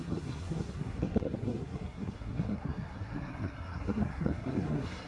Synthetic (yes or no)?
yes